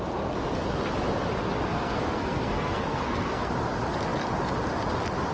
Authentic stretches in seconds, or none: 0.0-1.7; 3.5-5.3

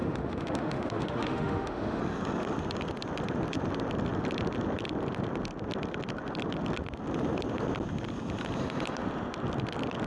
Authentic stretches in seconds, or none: 2.0-10.1

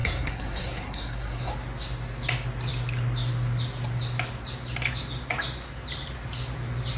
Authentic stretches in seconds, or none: 1.5-7.0

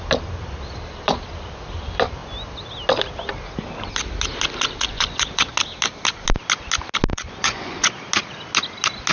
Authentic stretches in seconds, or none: 0.0-4.8; 5.5-7.1; 7.9-9.1